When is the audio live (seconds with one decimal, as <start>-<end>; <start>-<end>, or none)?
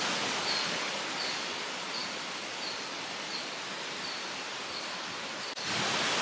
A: 0.0-6.2